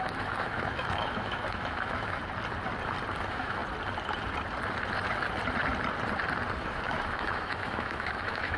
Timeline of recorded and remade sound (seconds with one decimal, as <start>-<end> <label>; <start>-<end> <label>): 0.0-2.2 remade; 2.2-3.2 recorded; 3.2-3.6 remade; 3.6-6.6 recorded; 6.6-8.6 remade